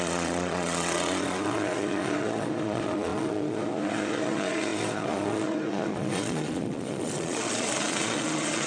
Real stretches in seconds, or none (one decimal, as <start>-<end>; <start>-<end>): none